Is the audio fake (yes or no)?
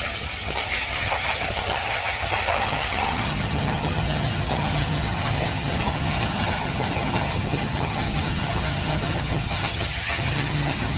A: yes